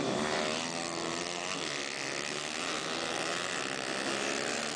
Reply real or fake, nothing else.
real